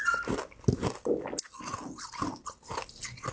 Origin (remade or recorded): remade